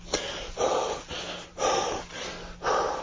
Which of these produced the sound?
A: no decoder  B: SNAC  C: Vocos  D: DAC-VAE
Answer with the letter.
A